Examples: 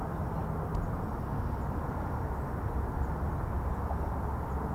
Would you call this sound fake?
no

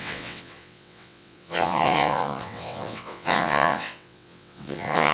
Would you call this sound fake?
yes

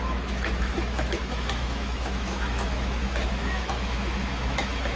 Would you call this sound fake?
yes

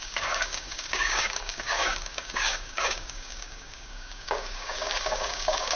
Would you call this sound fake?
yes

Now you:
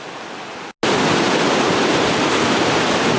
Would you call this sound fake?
no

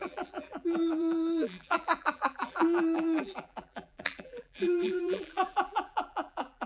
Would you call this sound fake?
yes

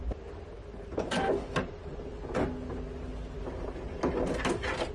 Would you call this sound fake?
no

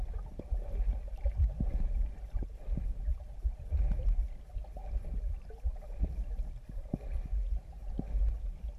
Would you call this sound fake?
no